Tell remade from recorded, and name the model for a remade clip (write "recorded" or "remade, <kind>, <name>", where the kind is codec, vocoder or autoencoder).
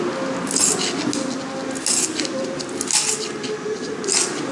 recorded